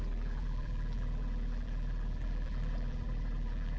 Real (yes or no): no